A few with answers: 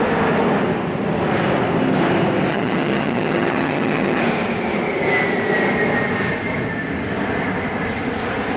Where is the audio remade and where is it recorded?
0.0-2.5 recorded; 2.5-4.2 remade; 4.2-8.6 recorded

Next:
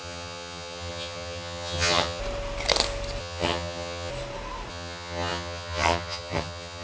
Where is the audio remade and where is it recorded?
0.0-2.2 remade; 2.2-3.2 recorded; 3.2-4.1 remade; 4.1-4.7 recorded; 4.7-6.8 remade

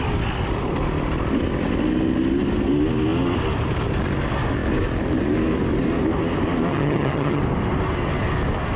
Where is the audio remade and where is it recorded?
0.0-6.7 recorded; 6.7-7.4 remade; 7.4-8.8 recorded

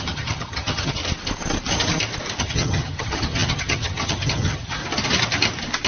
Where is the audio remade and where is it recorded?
0.0-1.0 remade; 1.0-2.4 recorded; 2.4-4.8 remade; 4.8-5.9 recorded

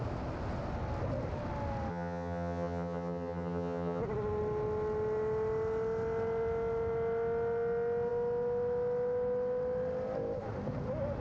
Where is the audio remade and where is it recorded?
0.0-1.9 recorded; 1.9-4.0 remade; 4.0-11.2 recorded

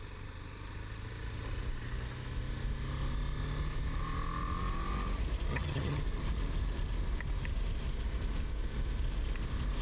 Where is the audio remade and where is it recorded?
0.0-5.5 recorded; 5.5-6.0 remade; 6.0-9.8 recorded

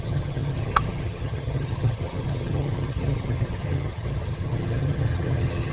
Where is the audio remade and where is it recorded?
0.0-5.7 remade